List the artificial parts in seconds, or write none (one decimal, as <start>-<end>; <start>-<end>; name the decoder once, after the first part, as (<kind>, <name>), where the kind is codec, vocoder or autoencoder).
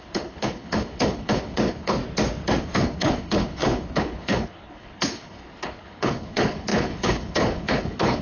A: 0.0-2.0 (codec, HILCodec); 2.6-8.2